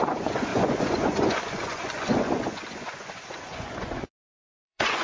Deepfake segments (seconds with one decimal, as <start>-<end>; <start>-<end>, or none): 0.0-5.0